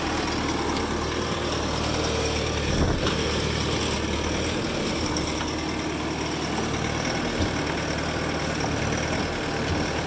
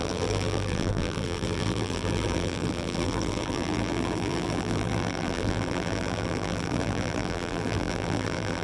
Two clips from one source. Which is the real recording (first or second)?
first